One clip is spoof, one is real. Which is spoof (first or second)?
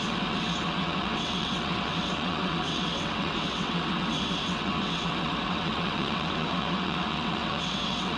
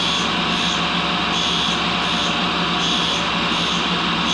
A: first